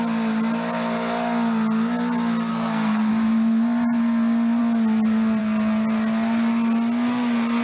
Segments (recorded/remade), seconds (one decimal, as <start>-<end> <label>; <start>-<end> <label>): 0.0-2.5 recorded; 2.5-3.1 remade; 3.1-7.6 recorded